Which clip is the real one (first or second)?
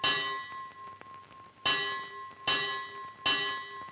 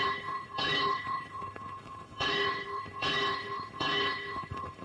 first